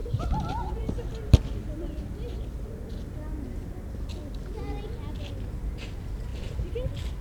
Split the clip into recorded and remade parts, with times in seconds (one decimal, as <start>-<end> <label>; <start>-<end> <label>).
0.0-0.7 remade; 0.7-7.2 recorded